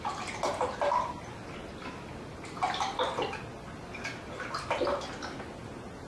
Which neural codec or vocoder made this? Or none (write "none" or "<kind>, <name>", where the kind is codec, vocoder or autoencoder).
none